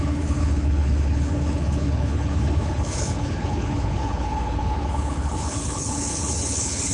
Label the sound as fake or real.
fake